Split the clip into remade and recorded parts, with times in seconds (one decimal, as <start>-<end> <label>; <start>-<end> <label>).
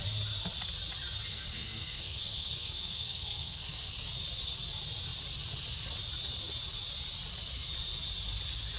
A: 0.0-1.3 recorded; 1.3-3.9 remade; 3.9-8.8 recorded